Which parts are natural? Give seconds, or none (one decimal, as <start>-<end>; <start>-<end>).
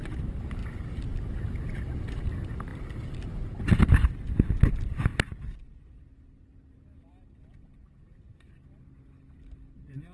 0.0-0.6; 1.3-5.1; 8.4-10.1